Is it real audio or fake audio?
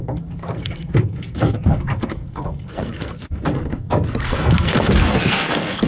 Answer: fake